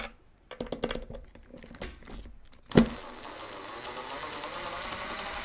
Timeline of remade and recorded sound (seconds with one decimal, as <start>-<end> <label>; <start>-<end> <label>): 0.0-5.4 recorded

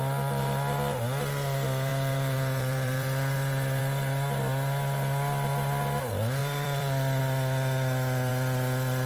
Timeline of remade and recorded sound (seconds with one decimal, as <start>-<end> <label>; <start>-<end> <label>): 0.0-1.9 recorded; 1.9-3.8 remade; 3.8-6.4 recorded; 6.4-7.2 remade; 7.2-9.1 recorded

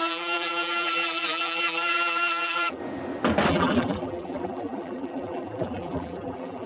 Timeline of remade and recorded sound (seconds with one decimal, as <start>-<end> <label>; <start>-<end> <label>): 0.0-2.8 remade; 2.8-3.5 recorded; 3.5-6.7 remade